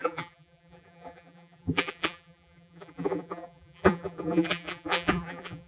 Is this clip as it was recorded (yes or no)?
no